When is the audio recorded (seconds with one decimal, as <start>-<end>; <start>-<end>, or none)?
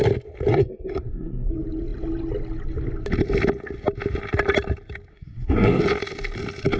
0.0-0.5; 1.5-5.1; 5.8-6.8